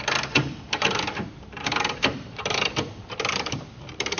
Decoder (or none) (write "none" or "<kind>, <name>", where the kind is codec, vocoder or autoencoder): vocoder, BigVGAN v2